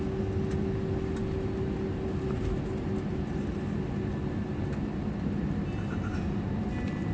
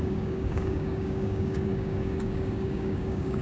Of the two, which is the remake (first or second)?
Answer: second